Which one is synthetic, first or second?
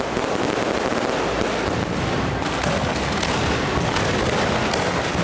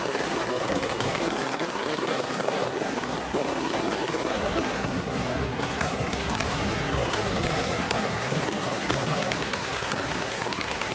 second